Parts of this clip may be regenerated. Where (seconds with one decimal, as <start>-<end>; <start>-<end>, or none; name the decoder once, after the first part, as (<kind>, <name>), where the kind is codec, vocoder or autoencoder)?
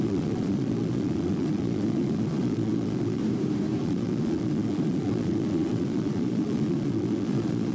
0.0-3.2 (vocoder, Vocos); 3.8-7.7